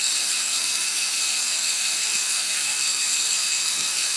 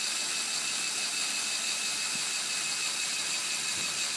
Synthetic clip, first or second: first